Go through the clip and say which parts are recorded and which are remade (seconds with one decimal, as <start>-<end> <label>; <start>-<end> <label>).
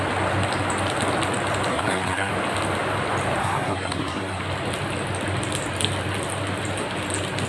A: 0.0-1.7 recorded; 1.7-2.3 remade; 2.3-3.4 recorded; 3.4-4.4 remade; 4.4-7.5 recorded